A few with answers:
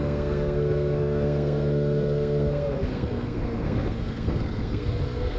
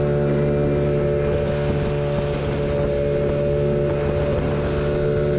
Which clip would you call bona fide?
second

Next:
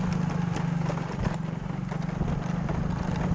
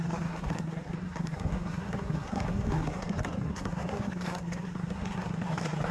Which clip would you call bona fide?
first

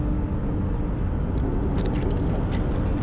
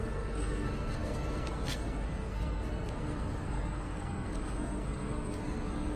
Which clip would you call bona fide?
first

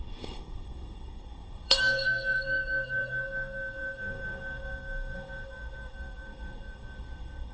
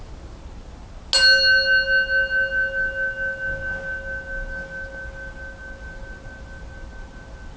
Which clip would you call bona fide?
second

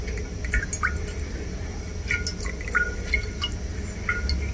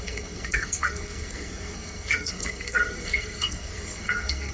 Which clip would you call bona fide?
first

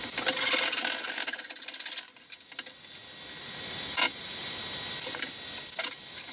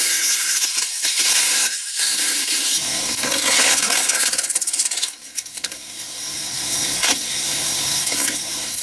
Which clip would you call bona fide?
first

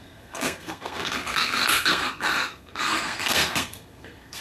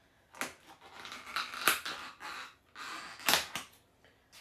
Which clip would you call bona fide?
second